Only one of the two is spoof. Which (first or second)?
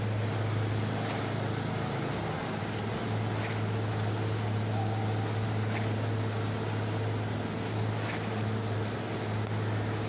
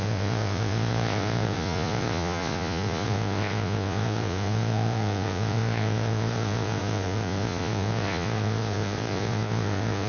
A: second